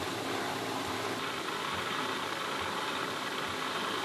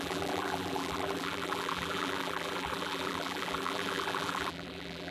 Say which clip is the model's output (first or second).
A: second